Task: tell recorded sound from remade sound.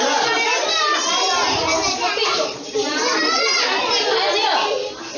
recorded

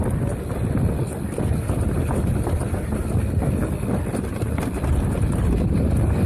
recorded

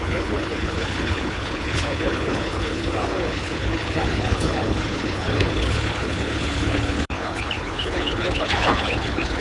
remade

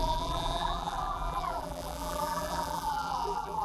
remade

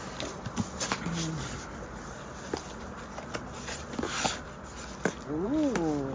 recorded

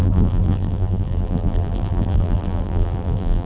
remade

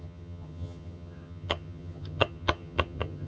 remade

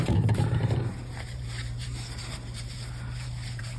remade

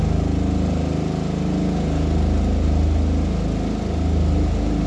recorded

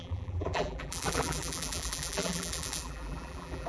remade